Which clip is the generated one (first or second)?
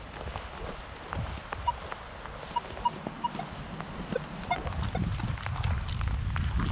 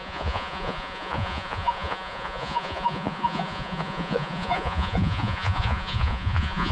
second